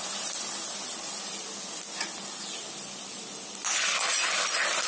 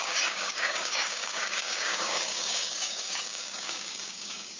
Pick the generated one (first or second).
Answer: second